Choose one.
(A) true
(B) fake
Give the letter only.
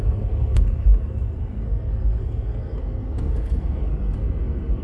B